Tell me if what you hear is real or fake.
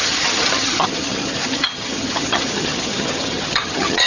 fake